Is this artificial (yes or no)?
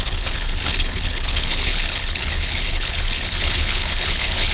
yes